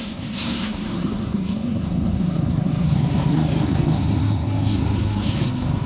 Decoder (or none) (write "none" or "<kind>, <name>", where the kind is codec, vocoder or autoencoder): codec, SNAC